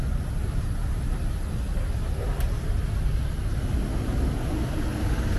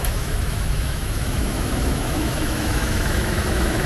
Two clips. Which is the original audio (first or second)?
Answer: first